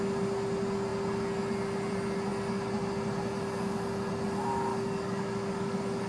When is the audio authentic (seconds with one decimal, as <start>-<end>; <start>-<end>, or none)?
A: 0.0-4.7